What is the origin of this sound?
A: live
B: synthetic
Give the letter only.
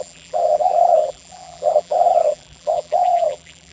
B